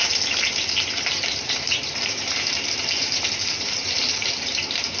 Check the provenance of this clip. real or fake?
fake